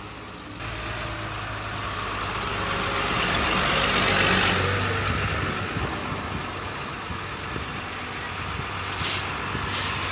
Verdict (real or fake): real